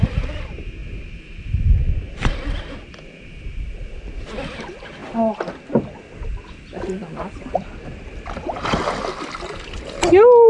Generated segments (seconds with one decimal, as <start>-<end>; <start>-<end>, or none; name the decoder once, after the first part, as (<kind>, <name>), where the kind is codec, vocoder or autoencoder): none